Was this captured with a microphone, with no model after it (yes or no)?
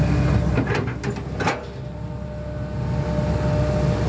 yes